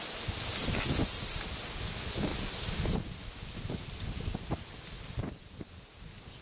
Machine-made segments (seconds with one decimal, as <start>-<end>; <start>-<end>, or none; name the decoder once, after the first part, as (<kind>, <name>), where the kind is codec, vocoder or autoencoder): 2.3-3.9 (vocoder, BigVGAN v2)